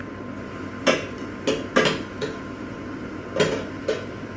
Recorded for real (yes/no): yes